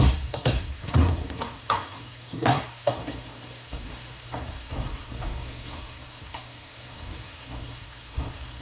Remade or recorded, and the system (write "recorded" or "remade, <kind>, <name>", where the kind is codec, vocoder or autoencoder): remade, codec, SNAC